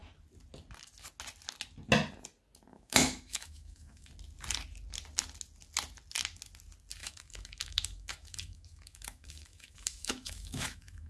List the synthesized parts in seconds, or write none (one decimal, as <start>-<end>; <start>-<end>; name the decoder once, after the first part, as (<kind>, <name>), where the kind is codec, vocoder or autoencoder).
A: 2.7-4.1 (autoencoder, DAC-VAE); 7.0-11.1